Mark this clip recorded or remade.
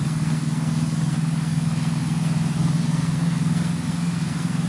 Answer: remade